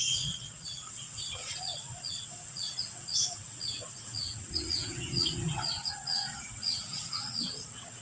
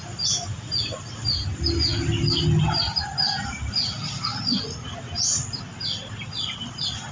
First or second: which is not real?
first